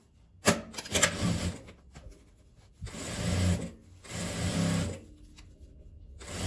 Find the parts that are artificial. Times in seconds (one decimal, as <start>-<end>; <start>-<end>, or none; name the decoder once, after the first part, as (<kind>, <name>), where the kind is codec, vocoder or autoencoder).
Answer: none